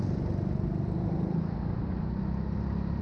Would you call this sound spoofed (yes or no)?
no